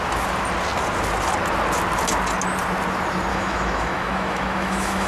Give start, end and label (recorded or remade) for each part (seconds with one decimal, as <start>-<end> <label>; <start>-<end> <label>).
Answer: 0.0-3.3 recorded; 3.3-5.1 remade